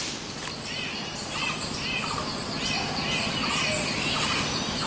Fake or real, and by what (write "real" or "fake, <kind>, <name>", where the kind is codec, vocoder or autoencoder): real